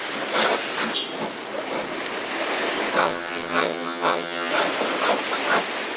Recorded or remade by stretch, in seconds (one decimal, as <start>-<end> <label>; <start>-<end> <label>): 0.0-3.0 recorded; 3.0-4.5 remade; 4.5-6.0 recorded